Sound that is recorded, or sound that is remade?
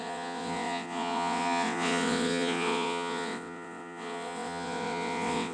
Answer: remade